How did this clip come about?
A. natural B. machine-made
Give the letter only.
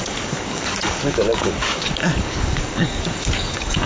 B